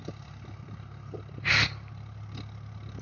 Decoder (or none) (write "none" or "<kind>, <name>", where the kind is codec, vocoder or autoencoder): none